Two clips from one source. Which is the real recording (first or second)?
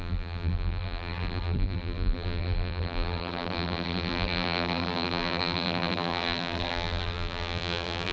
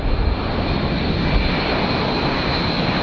second